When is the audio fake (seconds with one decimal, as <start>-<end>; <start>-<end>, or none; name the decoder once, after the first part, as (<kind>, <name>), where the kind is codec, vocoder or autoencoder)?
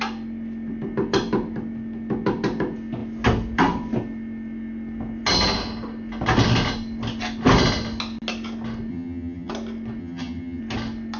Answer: 8.9-9.5 (vocoder, HiFi-GAN); 10.0-10.6